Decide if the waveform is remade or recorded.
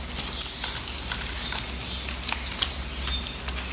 recorded